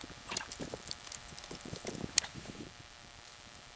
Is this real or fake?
fake